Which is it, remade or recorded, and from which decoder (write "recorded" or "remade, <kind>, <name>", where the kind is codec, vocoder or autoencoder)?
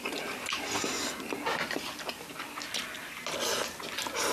recorded